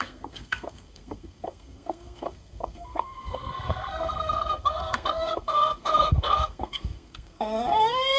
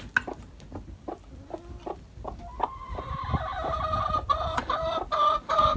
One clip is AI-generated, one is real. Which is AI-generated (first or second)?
first